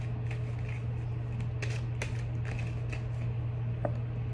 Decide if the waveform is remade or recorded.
recorded